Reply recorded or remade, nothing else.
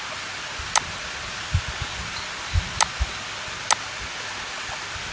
recorded